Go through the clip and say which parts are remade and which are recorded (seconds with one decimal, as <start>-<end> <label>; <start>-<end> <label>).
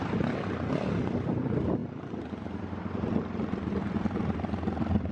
0.0-1.8 recorded; 1.8-5.1 remade